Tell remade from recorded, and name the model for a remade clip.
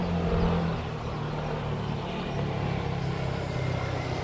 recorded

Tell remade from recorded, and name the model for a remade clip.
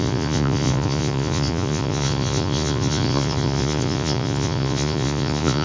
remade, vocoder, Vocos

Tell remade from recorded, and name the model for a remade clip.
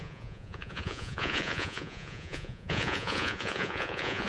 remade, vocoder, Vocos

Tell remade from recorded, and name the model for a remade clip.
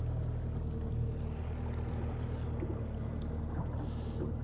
recorded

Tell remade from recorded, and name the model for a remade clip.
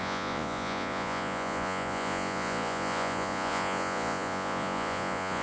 remade, vocoder, Vocos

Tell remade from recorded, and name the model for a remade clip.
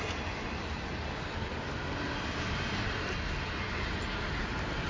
recorded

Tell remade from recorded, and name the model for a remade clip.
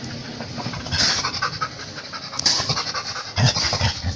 recorded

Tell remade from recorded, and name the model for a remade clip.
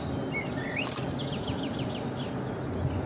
recorded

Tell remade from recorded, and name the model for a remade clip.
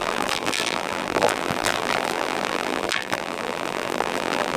remade, vocoder, BigVGAN v2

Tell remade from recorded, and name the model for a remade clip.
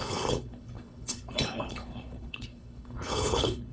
remade, codec, HILCodec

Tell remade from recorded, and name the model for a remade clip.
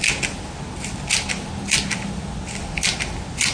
recorded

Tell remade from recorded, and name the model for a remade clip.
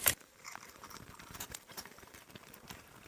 remade, vocoder, BigVGAN v2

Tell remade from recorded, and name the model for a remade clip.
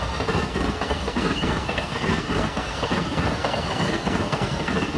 remade, codec, SNAC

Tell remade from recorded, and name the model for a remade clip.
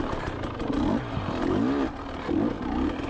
recorded